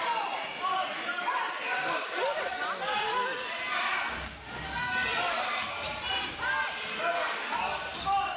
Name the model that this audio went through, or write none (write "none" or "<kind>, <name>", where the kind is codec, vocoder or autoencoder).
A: none